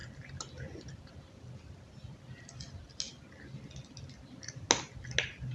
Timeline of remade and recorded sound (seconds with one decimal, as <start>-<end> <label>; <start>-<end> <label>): 0.0-5.5 recorded